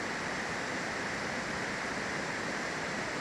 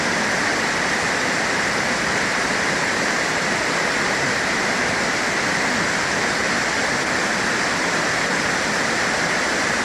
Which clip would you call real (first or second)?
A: first